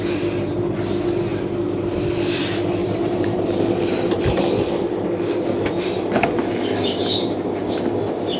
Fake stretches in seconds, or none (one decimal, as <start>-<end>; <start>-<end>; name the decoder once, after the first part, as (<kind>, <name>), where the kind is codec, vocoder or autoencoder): 2.8-7.3 (vocoder, BigVGAN v2)